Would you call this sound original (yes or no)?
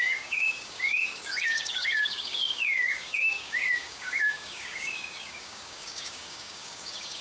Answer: no